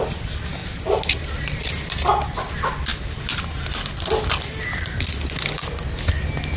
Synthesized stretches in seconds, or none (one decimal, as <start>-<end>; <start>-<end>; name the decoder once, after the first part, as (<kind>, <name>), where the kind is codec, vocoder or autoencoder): 0.6-1.6 (vocoder, BigVGAN v2)